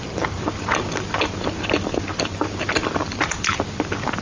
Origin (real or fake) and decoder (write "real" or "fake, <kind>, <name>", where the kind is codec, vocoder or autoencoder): real